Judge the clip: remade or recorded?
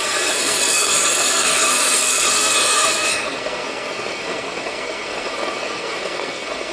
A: remade